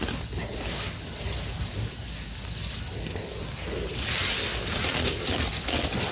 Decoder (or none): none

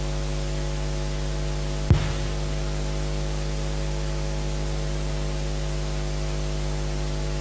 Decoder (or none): none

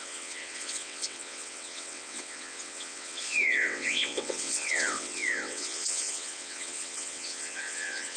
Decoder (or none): vocoder, WaveNeXt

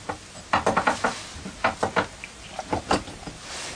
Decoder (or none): none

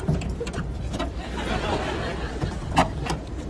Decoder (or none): none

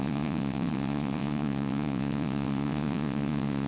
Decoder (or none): vocoder, WaveNeXt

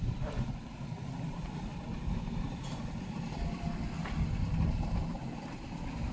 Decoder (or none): none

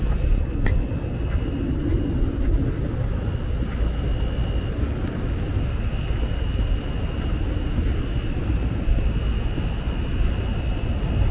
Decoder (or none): none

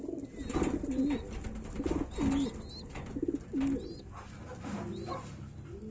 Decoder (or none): none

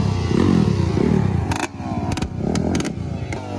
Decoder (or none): none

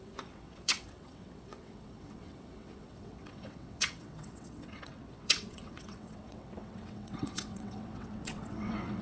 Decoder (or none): vocoder, WaveNeXt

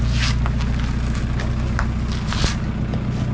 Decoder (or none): none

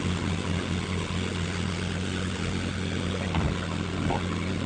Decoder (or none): none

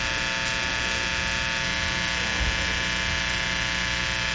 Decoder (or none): none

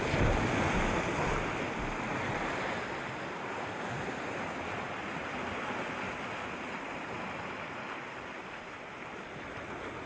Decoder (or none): none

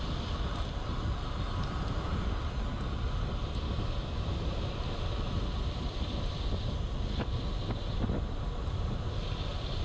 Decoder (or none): none